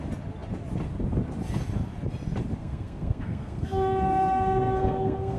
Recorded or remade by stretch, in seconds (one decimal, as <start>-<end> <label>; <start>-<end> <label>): 0.0-2.6 recorded; 2.6-5.4 remade